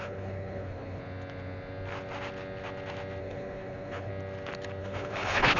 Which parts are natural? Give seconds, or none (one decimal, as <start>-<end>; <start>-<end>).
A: 1.0-3.2; 4.1-4.8